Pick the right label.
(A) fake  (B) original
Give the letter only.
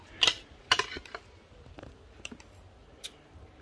B